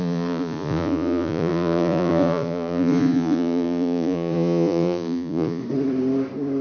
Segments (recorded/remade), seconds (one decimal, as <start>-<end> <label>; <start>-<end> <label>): 0.0-5.6 remade; 5.6-6.6 recorded